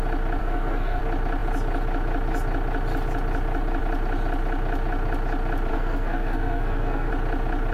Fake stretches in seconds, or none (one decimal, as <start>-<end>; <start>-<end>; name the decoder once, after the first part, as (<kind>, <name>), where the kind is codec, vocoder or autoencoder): 0.4-1.0 (codec, SNAC); 5.7-7.1